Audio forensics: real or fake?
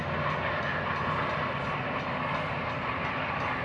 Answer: fake